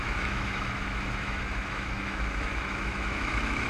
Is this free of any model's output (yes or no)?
no